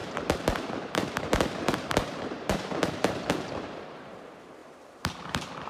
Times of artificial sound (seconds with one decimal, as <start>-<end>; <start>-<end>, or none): 0.0-5.7